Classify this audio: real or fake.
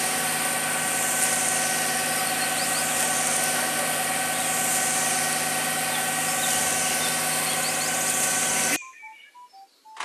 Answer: real